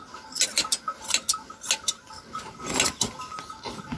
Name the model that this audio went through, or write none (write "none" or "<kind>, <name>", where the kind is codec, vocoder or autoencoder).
none